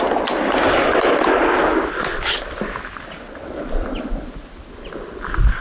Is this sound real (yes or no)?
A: yes